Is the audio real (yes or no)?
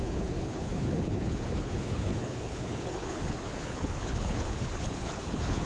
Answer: no